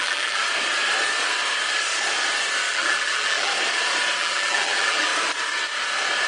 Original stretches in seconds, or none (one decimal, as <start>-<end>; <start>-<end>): 0.4-2.7; 3.5-4.2; 5.1-6.3